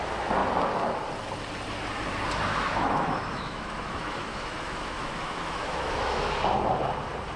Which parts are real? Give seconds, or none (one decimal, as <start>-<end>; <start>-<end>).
0.0-2.5; 6.4-7.4